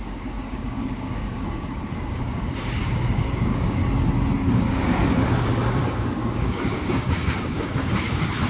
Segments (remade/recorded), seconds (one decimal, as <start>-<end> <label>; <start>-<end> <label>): 0.0-3.8 remade; 3.8-4.5 recorded; 4.5-8.5 remade